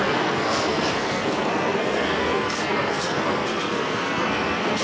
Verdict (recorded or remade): remade